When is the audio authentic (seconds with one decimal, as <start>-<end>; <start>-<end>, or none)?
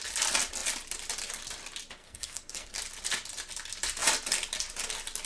0.0-2.0; 2.7-5.3